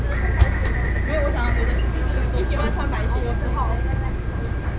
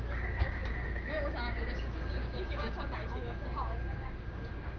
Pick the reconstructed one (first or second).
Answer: second